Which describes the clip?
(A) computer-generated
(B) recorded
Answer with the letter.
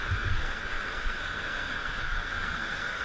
A